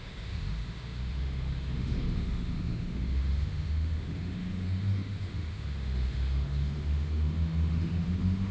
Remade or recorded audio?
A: remade